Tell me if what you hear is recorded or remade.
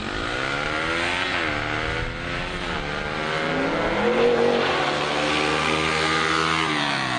recorded